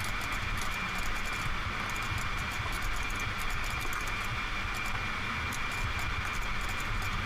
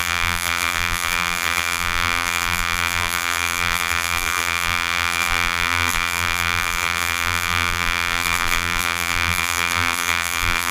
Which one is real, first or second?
first